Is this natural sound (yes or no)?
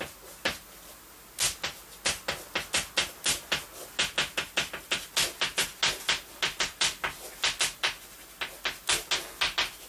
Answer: yes